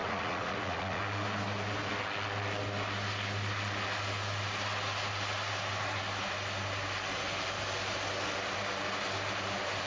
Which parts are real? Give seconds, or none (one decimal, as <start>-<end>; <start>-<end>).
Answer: 1.0-9.9